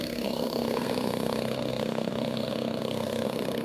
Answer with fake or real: fake